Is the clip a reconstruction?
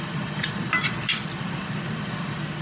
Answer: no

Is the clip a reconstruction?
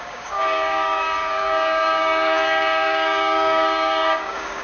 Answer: yes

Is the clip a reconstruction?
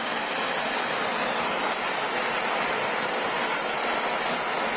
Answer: no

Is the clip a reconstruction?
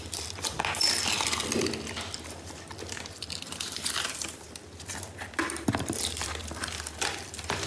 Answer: yes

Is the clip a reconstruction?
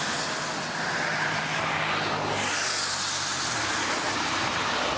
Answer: no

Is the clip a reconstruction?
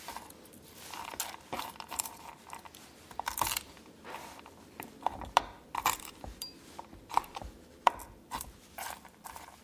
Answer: no